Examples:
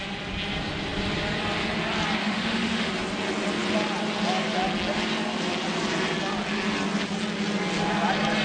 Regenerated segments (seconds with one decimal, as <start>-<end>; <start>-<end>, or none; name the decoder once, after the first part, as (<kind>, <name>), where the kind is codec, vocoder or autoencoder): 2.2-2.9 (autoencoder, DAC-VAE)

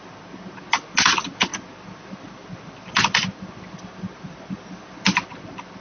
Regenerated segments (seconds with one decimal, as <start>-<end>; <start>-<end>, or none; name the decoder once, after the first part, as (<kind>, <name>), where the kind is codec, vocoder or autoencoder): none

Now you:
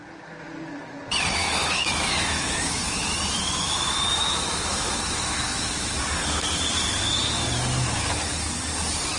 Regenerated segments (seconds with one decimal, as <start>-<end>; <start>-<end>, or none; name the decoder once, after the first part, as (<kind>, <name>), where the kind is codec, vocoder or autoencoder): 1.4-5.9 (autoencoder, DAC-VAE)

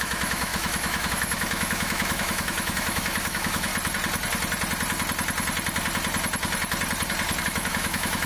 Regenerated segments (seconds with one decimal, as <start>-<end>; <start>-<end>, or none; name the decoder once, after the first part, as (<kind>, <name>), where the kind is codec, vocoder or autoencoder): 0.0-3.7 (autoencoder, DAC-VAE); 7.4-8.3

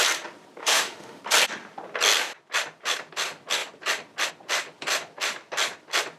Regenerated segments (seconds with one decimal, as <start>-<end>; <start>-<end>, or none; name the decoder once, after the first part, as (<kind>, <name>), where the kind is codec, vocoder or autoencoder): 0.6-1.2 (autoencoder, DAC-VAE)

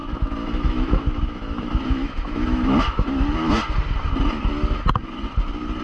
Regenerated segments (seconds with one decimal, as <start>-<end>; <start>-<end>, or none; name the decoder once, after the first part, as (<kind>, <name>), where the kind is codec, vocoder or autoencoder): 0.0-3.5 (autoencoder, DAC-VAE)